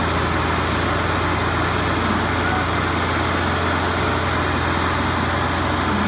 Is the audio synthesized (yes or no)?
no